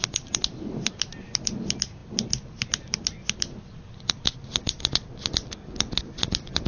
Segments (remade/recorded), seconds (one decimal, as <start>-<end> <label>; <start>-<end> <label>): 0.0-6.7 recorded